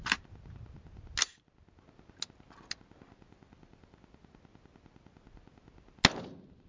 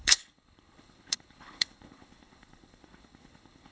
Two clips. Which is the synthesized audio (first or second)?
second